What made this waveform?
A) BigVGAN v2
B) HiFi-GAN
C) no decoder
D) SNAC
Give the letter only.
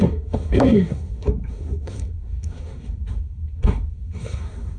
D